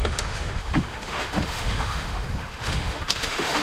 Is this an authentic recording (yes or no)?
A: no